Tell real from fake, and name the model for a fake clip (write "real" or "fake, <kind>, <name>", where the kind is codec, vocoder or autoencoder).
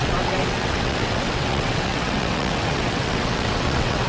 fake, vocoder, WaveNeXt